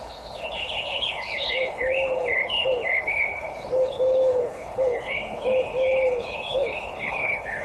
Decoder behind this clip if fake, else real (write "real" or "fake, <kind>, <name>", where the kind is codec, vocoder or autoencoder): fake, codec, HILCodec